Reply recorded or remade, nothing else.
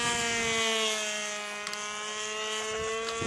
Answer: recorded